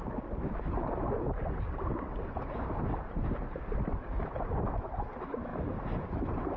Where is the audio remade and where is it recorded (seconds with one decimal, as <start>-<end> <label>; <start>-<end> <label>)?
0.0-6.6 recorded